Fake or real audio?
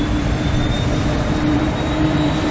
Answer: fake